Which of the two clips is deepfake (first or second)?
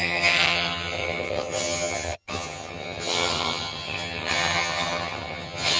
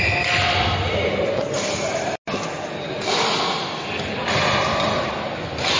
first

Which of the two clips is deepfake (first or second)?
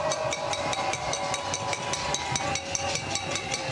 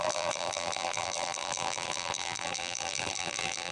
second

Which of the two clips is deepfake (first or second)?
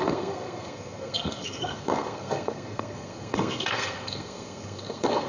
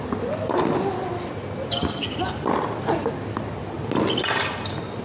first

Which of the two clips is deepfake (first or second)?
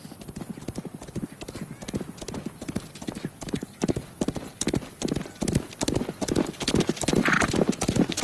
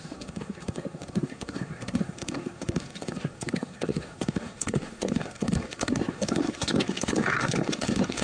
second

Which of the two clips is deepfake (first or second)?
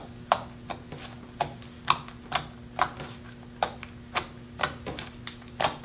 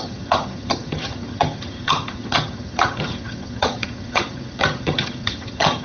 second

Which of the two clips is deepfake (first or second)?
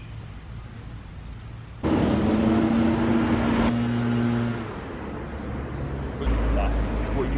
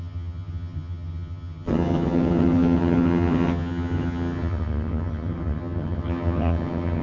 second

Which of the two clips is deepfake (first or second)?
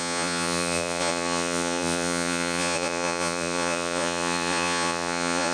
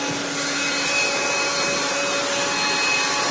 first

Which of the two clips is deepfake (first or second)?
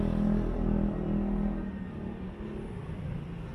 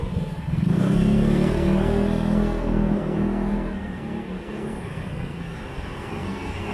second